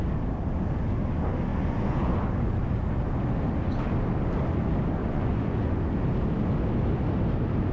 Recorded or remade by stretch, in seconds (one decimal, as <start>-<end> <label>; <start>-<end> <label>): 0.0-1.5 recorded; 1.5-2.3 remade; 2.3-5.0 recorded; 5.0-5.8 remade; 5.8-7.7 recorded

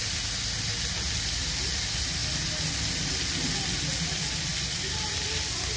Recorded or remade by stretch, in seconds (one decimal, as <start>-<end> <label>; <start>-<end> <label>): 0.0-5.8 recorded